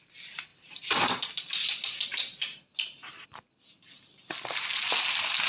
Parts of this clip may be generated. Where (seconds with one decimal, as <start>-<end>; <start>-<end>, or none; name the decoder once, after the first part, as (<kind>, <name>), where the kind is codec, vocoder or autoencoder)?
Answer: none